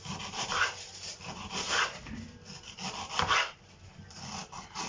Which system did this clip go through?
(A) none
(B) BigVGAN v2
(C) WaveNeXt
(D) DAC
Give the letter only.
B